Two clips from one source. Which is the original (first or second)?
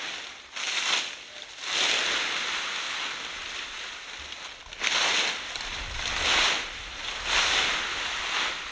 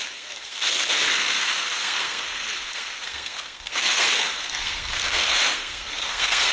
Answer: first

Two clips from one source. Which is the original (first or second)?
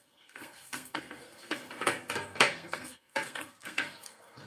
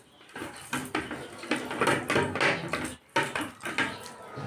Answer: second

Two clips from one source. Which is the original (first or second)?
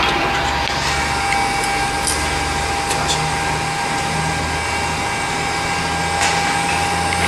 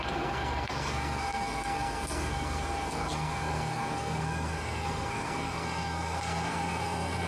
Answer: first